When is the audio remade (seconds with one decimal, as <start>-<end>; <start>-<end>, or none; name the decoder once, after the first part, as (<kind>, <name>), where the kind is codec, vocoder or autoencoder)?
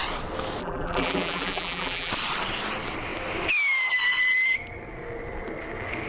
0.6-2.1 (vocoder, BigVGAN v2)